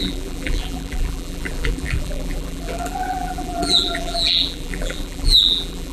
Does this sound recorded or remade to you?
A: remade